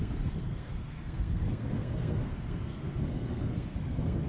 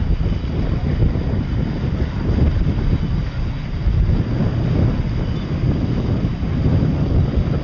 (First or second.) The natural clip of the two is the second